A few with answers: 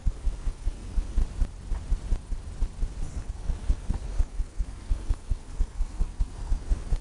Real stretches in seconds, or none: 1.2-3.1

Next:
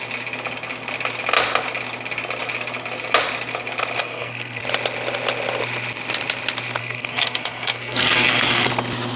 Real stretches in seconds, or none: 0.0-4.0; 4.6-6.8; 8.7-9.2

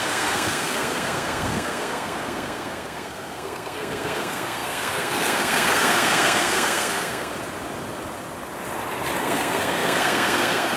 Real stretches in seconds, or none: 7.3-9.2

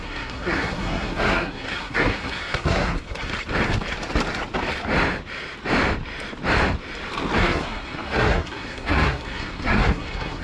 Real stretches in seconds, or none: 3.3-7.4

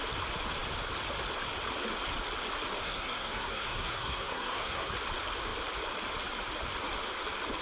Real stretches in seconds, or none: 0.0-2.8; 4.9-7.6

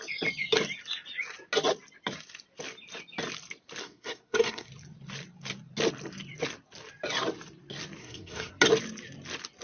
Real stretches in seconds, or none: 0.0-3.8; 4.7-8.0; 8.5-9.6

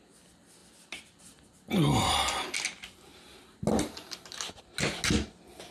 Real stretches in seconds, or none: 0.0-5.7